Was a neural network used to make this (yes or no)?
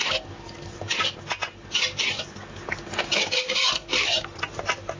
no